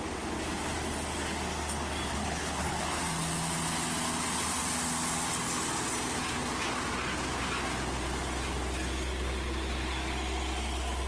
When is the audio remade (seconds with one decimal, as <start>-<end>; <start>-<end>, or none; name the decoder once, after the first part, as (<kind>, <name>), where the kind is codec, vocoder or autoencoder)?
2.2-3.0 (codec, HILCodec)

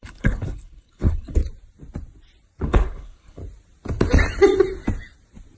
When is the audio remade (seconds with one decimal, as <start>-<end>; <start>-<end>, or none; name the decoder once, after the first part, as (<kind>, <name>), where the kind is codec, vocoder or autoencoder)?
0.0-1.4 (codec, HILCodec); 2.6-3.4

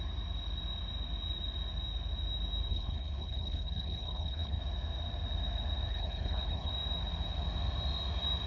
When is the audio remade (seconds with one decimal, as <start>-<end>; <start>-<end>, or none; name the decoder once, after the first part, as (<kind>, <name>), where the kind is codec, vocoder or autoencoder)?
2.7-4.6 (codec, HILCodec); 5.9-6.7

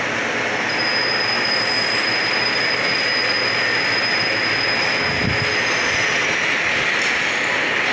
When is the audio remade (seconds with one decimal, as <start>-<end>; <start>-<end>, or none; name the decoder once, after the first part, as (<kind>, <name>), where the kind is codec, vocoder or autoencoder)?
none

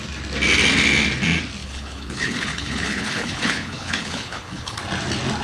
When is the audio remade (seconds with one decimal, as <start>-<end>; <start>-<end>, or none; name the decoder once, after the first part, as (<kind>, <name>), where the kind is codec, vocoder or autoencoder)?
1.6-4.8 (codec, HILCodec)